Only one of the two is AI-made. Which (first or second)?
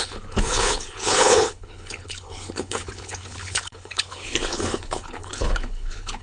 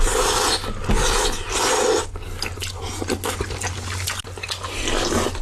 first